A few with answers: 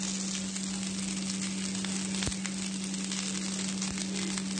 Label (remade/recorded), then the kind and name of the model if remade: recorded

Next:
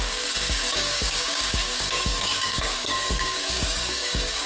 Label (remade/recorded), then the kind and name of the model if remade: remade, codec, DAC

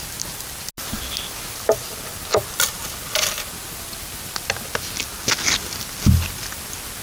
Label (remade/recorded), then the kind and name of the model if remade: recorded